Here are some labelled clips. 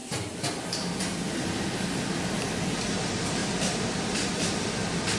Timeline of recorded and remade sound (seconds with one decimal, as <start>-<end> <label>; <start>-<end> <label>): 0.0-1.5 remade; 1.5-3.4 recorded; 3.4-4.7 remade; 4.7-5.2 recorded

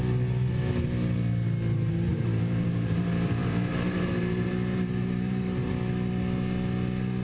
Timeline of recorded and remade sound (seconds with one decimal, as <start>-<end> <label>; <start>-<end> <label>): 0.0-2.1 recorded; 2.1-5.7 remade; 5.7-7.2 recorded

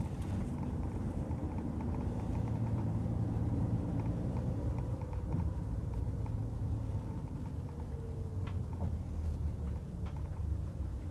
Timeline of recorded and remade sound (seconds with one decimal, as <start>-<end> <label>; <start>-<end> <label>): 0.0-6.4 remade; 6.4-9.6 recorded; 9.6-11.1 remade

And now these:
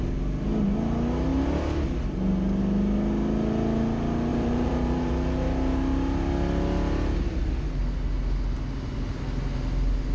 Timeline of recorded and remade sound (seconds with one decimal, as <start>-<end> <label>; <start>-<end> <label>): 0.0-4.3 recorded; 4.3-5.1 remade; 5.1-10.1 recorded

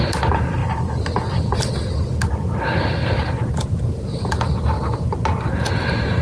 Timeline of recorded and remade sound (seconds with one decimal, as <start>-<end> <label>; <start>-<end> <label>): 0.0-0.6 recorded; 0.6-2.2 remade; 2.2-3.0 recorded; 3.0-4.3 remade; 4.3-6.2 recorded

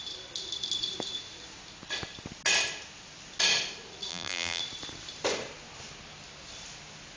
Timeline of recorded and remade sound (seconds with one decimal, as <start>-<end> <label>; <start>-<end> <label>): 0.0-4.1 recorded; 4.1-4.6 remade; 4.6-7.2 recorded

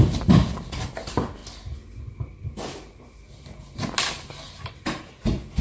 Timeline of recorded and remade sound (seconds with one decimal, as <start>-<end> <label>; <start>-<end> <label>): 0.0-5.6 recorded

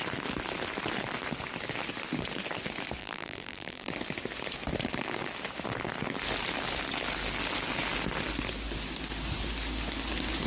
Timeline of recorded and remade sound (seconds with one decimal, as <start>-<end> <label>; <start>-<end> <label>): 0.0-3.0 recorded; 3.0-3.9 remade; 3.9-10.5 recorded